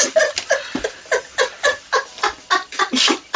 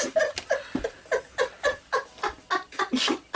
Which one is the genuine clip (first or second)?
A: second